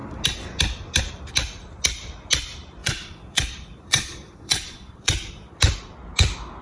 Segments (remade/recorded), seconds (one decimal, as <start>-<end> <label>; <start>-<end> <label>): 0.0-2.8 recorded; 2.8-5.6 remade; 5.6-6.6 recorded